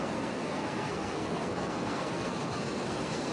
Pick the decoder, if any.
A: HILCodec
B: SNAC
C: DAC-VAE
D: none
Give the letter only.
B